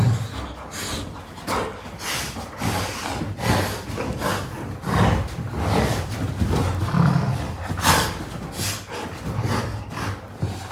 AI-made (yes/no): no